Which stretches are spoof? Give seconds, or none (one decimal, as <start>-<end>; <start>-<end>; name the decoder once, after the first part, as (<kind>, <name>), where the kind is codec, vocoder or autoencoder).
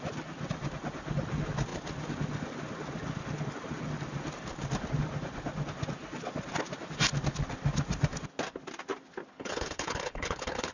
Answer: 9.3-10.7 (codec, HILCodec)